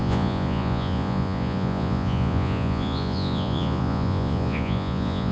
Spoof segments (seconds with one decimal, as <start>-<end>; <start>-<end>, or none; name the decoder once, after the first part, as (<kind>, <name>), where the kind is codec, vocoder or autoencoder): 0.0-5.3 (vocoder, Vocos)

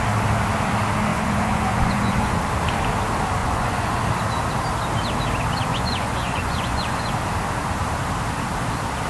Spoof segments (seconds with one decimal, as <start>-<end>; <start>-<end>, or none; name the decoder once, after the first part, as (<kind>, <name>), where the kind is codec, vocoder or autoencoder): 1.1-2.4 (vocoder, Vocos); 3.4-4.0; 5.7-7.1

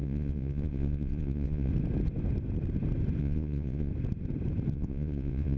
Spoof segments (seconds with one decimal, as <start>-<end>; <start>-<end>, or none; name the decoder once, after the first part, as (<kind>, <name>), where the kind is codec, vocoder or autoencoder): 0.0-1.7 (vocoder, Vocos); 3.2-3.9; 4.7-5.6

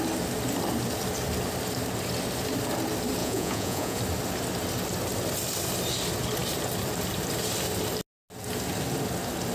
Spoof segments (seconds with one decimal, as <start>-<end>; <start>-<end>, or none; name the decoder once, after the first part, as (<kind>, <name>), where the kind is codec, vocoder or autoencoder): 3.2-4.0 (vocoder, Vocos)

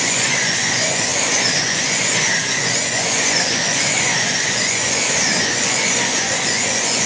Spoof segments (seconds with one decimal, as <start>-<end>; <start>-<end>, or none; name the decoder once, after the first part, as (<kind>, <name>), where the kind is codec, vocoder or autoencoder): 0.0-7.1 (vocoder, Vocos)

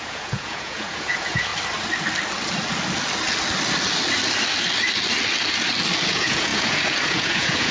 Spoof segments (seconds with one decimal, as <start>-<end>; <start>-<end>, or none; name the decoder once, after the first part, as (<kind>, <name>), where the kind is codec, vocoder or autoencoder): 0.0-1.5 (vocoder, Vocos); 6.1-7.7

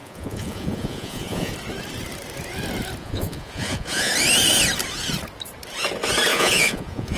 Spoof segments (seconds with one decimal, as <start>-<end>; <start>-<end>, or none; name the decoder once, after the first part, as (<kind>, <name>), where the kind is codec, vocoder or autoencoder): 0.0-1.5 (vocoder, Vocos); 3.0-4.1; 6.3-7.2